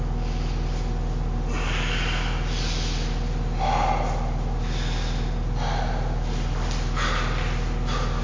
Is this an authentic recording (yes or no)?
yes